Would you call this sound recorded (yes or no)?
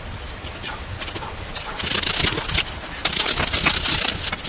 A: yes